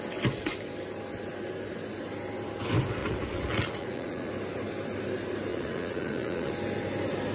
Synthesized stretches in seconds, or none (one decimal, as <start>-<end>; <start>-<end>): 3.0-4.3; 5.5-6.5